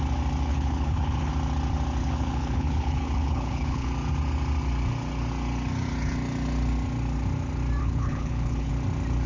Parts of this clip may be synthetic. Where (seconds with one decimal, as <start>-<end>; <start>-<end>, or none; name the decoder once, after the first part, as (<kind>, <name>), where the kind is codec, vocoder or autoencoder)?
0.5-1.3 (codec, HILCodec); 2.0-3.9; 7.8-8.7